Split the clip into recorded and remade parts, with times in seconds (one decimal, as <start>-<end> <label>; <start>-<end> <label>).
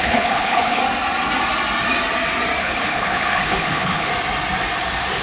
0.0-0.8 remade; 0.8-2.6 recorded; 2.6-4.1 remade; 4.1-5.2 recorded